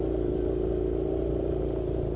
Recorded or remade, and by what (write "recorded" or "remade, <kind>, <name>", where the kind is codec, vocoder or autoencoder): recorded